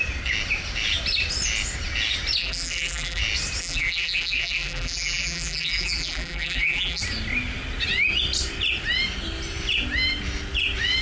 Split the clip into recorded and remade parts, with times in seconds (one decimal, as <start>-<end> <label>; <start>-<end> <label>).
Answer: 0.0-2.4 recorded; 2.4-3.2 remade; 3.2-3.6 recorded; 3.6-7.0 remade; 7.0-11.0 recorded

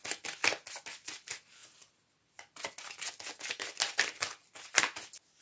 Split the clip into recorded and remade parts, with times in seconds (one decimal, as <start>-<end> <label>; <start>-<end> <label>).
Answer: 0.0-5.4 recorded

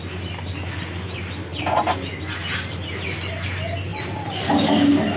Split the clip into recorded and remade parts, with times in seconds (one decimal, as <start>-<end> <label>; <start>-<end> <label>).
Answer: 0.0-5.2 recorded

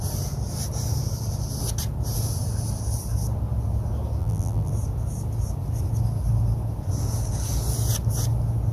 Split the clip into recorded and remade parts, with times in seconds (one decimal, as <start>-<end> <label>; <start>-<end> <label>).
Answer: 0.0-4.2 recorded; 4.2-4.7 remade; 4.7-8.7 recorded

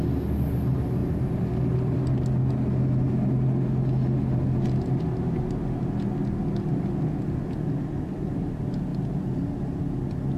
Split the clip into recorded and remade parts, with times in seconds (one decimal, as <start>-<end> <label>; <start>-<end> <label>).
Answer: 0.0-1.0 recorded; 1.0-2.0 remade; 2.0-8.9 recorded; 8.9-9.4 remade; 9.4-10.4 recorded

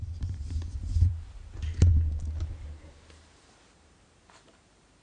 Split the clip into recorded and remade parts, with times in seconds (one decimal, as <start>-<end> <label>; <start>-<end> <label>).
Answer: 0.0-1.9 remade; 1.9-2.4 recorded; 2.4-5.0 remade

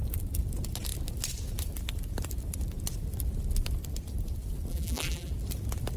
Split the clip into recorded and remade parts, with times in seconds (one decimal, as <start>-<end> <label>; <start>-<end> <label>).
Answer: 0.0-4.7 recorded; 4.7-5.3 remade; 5.3-6.0 recorded

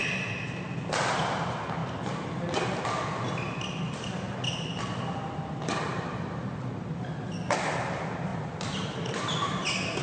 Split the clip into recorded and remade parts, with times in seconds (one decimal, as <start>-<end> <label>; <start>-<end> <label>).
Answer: 0.0-10.0 recorded